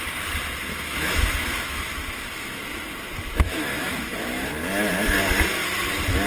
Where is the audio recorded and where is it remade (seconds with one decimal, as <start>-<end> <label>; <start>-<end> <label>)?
0.0-0.7 recorded; 0.7-4.5 remade; 4.5-6.3 recorded